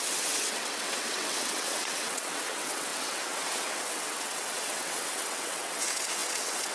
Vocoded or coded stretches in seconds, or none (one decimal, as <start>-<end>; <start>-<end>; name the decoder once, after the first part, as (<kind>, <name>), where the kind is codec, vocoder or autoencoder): 0.0-6.7 (vocoder, WaveNeXt)